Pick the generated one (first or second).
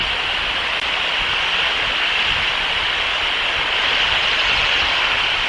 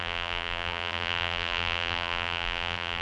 second